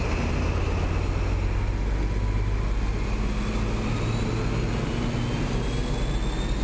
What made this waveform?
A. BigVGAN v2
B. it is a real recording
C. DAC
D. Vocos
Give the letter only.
B